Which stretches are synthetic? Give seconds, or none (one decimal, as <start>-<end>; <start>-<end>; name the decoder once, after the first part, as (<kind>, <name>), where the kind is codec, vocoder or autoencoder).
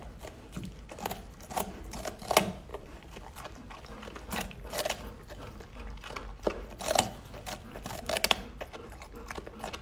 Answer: 2.7-3.8 (vocoder, BigVGAN v2)